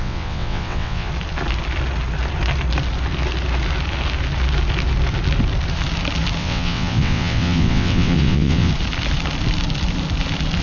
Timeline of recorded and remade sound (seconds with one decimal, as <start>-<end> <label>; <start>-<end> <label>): 0.0-1.1 remade; 1.1-6.4 recorded; 6.4-8.7 remade; 8.7-10.6 recorded